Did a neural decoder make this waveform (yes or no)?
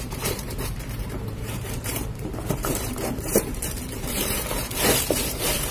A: yes